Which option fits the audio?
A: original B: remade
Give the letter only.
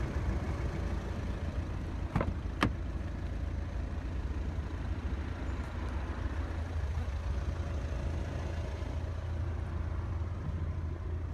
A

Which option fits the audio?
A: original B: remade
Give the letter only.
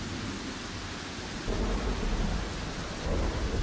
A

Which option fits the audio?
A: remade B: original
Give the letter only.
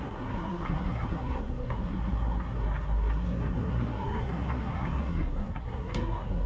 A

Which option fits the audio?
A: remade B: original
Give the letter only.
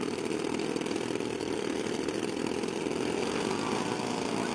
B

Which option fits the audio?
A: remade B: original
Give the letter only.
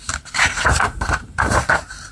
A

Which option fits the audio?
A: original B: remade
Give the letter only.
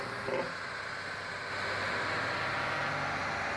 A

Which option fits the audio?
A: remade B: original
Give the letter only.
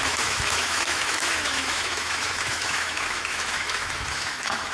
A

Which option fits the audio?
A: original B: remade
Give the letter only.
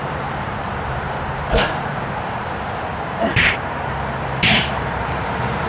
B